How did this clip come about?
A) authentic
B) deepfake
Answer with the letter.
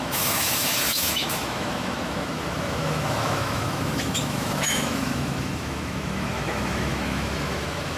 B